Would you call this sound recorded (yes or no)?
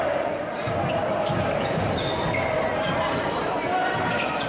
yes